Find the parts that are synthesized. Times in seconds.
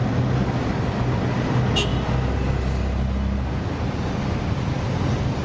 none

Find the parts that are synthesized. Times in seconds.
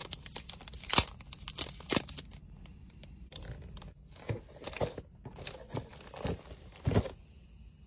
none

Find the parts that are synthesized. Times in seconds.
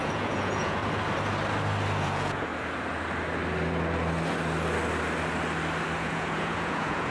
0.0-0.8 (vocoder, Vocos); 2.0-2.5; 6.0-7.1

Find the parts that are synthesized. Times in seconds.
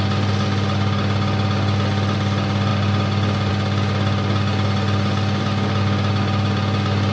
none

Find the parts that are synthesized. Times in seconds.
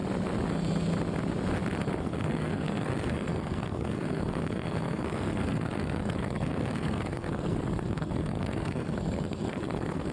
2.0-10.1 (codec, SNAC)